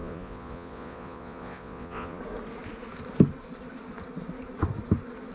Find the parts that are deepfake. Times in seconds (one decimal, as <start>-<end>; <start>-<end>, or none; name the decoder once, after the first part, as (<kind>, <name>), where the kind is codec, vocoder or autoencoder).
0.0-2.2 (vocoder, Vocos)